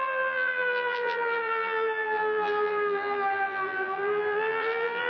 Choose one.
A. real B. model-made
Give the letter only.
B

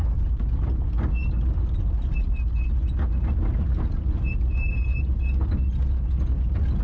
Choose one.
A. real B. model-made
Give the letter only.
A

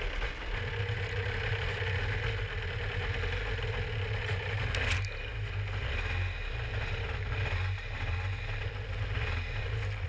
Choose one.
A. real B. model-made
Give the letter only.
A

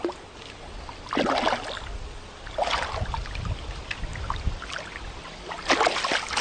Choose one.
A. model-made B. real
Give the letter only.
B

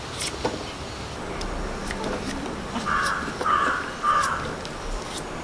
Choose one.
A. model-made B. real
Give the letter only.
B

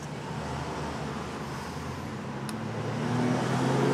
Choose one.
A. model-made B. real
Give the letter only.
B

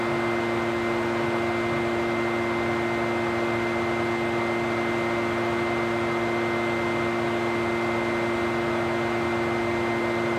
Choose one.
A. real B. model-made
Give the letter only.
A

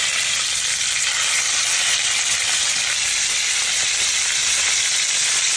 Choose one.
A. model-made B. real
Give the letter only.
B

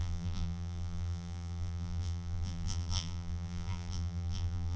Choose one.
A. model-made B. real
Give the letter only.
A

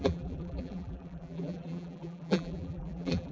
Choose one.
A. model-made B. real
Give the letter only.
A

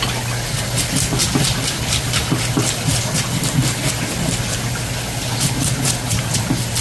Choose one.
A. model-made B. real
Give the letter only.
B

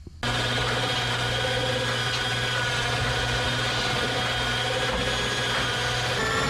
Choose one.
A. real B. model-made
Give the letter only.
A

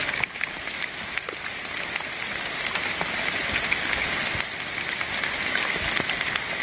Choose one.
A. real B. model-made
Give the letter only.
A